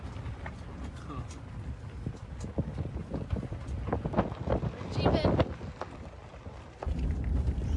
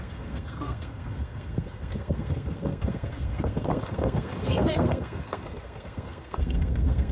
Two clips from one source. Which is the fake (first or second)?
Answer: second